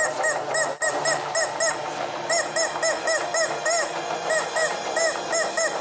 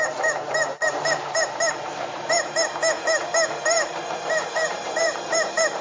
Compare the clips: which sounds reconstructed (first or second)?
second